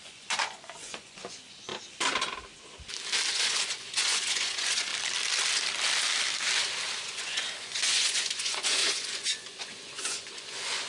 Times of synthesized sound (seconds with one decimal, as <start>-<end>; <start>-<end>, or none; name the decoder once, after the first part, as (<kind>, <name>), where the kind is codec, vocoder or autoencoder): 0.0-1.7 (vocoder, Vocos); 3.3-4.9; 7.0-10.9